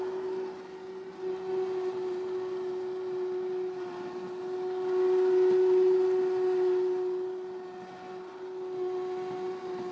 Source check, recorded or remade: recorded